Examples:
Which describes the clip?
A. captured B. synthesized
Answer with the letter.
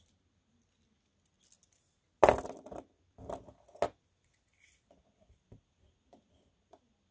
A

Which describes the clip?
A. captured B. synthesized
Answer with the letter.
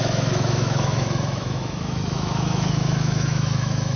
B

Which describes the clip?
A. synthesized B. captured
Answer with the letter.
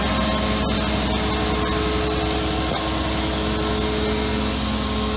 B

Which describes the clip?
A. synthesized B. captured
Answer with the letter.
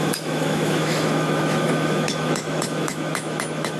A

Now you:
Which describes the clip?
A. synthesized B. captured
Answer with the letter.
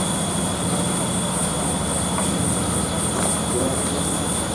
B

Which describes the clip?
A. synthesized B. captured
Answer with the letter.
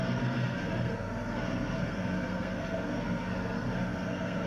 A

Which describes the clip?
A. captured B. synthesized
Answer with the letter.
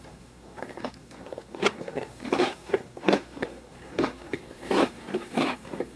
B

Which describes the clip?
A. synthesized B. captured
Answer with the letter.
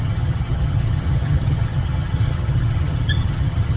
A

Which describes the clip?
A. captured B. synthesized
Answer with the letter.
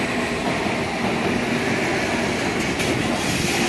A